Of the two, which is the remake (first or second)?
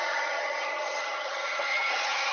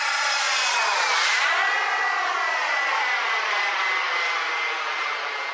first